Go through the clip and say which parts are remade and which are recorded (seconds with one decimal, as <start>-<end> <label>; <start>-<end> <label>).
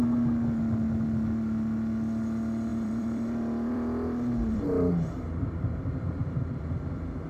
0.0-2.7 recorded; 2.7-7.3 remade